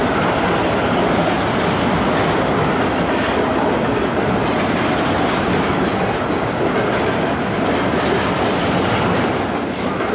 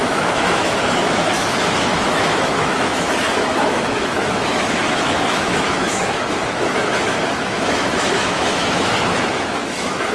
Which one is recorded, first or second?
first